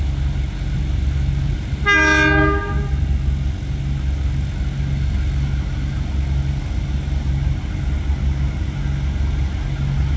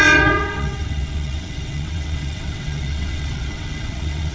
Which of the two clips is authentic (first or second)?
first